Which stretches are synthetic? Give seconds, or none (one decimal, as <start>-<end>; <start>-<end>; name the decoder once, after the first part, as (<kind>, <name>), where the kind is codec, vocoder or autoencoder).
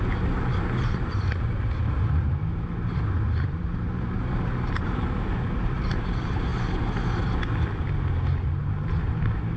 0.0-6.5 (vocoder, BigVGAN v2); 8.6-9.6